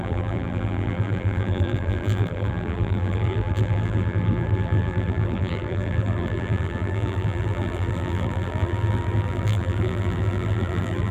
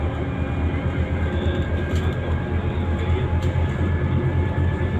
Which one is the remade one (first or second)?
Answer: first